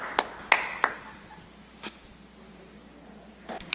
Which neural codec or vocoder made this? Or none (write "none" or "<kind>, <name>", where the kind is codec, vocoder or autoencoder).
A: none